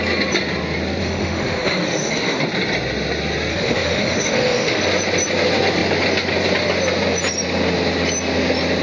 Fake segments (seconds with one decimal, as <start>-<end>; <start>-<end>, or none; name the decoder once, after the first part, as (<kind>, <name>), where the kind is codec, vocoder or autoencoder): 1.0-2.4 (autoencoder, DAC-VAE); 3.5-4.8